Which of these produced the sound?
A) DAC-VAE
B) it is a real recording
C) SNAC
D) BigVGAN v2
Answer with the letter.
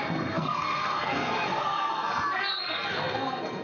C